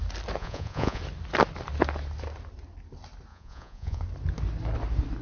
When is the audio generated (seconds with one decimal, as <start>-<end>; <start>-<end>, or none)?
0.4-1.0; 3.3-4.0